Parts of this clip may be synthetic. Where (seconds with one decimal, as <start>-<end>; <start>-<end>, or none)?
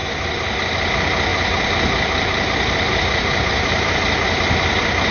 1.3-4.0